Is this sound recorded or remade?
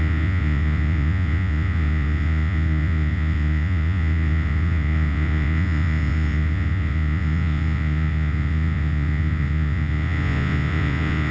remade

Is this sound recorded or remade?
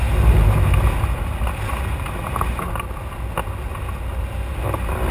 recorded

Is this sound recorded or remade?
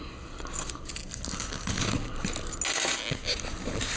recorded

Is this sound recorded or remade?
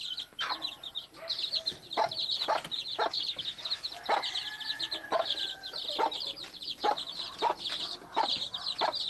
remade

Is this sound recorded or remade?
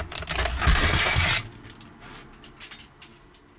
recorded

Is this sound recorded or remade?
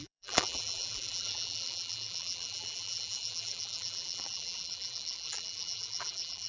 remade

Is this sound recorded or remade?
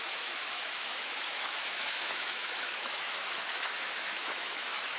remade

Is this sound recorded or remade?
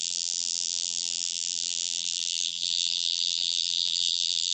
remade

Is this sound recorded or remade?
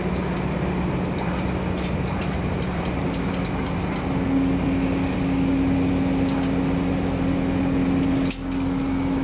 recorded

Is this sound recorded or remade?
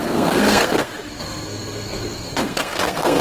remade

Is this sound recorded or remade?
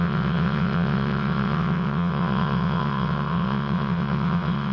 remade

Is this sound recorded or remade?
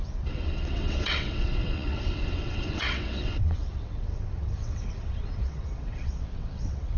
remade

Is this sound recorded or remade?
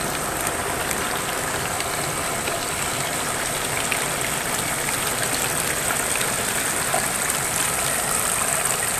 recorded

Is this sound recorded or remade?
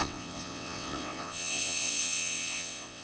remade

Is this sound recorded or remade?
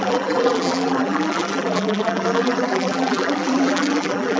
remade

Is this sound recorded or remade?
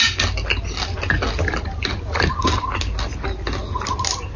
recorded